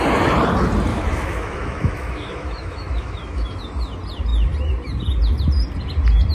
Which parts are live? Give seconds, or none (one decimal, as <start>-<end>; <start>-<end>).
0.0-0.9; 3.6-6.3